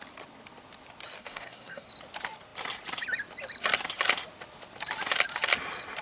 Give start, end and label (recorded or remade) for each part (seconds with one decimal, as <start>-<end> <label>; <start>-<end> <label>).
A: 0.0-1.2 recorded; 1.2-1.9 remade; 1.9-6.0 recorded